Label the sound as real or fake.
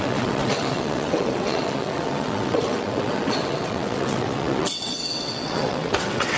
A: fake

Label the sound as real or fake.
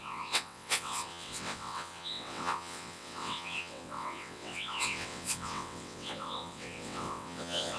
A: fake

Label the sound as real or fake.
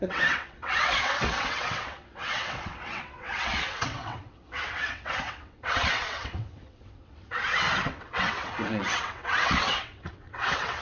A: fake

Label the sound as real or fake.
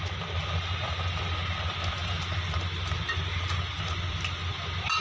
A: real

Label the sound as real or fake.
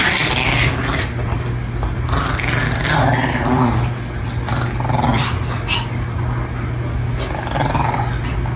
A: real